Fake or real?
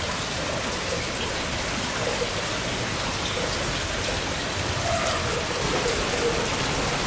real